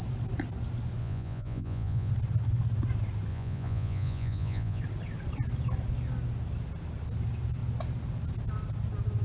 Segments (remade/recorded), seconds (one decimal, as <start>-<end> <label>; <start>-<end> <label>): 0.0-1.0 recorded; 1.0-2.1 remade; 2.1-3.3 recorded; 3.3-4.8 remade; 4.8-9.2 recorded